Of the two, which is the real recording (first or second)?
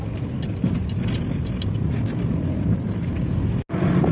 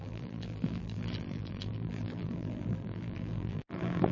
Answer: first